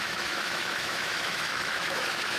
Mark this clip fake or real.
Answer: fake